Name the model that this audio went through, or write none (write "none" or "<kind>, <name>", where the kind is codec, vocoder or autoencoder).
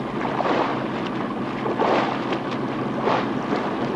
none